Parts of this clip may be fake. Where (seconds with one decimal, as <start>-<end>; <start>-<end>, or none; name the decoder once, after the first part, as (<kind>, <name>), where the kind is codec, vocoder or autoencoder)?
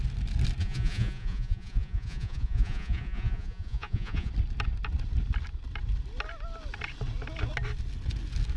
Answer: 0.6-4.3 (vocoder, Vocos)